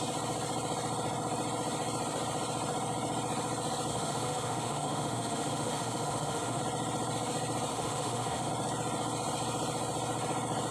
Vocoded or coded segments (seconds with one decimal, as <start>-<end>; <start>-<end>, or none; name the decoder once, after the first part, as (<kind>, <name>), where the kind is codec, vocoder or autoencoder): 3.9-6.6 (autoencoder, DAC-VAE); 7.7-8.5